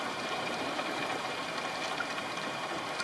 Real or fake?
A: fake